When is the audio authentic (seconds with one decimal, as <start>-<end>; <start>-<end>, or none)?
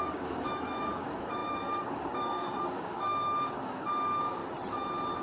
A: 4.4-5.2